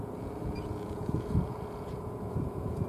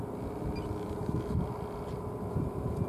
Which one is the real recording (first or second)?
second